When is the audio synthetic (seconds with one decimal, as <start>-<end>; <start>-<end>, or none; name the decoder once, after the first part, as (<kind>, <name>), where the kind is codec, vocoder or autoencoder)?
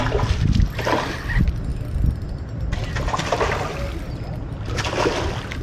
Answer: none